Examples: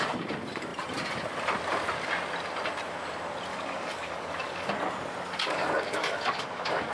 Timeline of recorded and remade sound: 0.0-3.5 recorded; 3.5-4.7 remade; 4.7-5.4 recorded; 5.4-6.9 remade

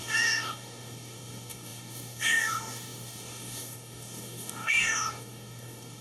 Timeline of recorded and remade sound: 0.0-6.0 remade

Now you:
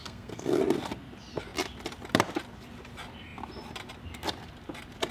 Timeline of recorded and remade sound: 0.0-0.6 remade; 0.6-5.1 recorded